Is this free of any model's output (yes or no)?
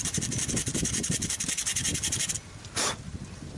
yes